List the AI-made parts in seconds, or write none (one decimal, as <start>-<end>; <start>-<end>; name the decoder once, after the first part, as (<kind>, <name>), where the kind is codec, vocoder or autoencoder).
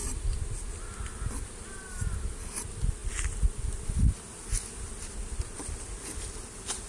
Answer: none